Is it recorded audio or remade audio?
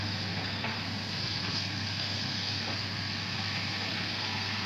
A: remade